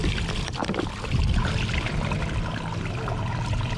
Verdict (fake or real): real